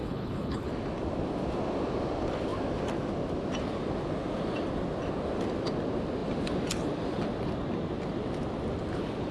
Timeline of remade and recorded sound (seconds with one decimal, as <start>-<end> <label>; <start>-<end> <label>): 0.0-0.7 remade; 0.7-9.3 recorded

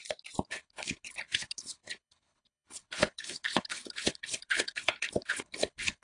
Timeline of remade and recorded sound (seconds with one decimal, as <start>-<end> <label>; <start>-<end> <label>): 0.0-0.5 recorded; 0.5-6.0 remade